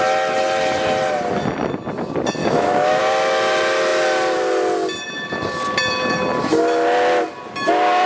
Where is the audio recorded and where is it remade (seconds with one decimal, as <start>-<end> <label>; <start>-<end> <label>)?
0.0-2.4 recorded; 2.4-3.0 remade; 3.0-8.1 recorded